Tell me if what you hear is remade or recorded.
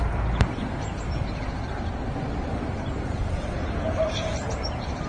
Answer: recorded